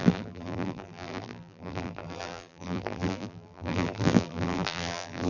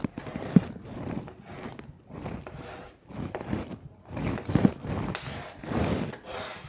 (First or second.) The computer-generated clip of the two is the first